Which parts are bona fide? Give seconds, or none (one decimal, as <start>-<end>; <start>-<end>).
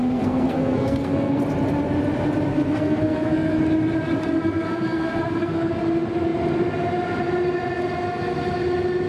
1.4-2.5; 3.6-4.4; 5.7-9.1